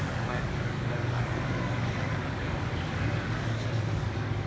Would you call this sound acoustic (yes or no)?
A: no